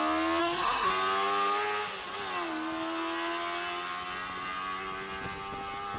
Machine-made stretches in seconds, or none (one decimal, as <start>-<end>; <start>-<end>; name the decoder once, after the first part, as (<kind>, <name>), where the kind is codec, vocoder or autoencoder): 0.4-0.9 (codec, SNAC)